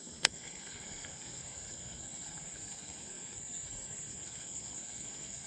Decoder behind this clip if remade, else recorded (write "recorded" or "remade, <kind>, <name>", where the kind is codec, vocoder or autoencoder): remade, codec, SNAC